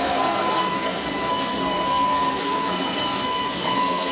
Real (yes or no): no